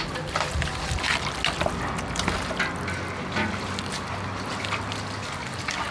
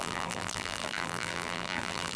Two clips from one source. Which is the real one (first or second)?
first